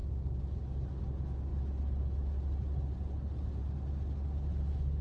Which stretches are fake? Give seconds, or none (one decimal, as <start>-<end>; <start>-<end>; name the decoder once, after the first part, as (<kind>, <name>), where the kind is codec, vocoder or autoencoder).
none